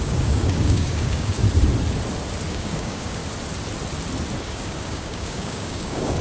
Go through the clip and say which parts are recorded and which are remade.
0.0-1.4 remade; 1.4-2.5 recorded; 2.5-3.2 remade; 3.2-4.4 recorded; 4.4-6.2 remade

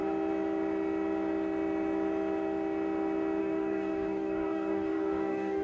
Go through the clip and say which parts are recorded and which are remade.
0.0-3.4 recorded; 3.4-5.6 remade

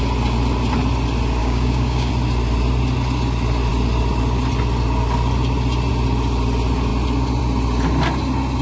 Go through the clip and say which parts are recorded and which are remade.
0.0-1.4 recorded; 1.4-2.1 remade; 2.1-8.6 recorded

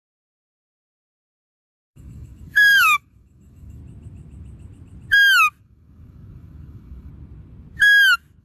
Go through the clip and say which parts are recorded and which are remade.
0.0-3.8 remade; 3.8-5.6 recorded; 5.6-7.1 remade; 7.1-8.4 recorded

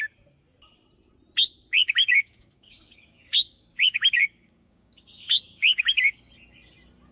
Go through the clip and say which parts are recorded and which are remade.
0.0-2.0 recorded; 2.0-6.3 remade; 6.3-7.1 recorded